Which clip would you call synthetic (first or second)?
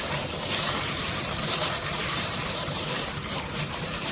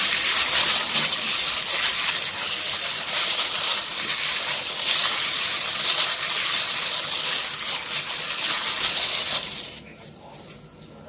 first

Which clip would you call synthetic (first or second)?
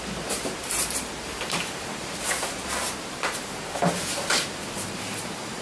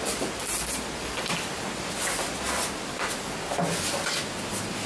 first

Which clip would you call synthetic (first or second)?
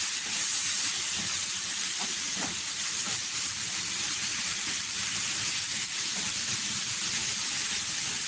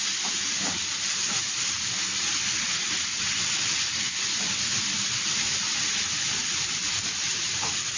first